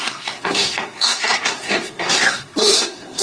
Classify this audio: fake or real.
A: fake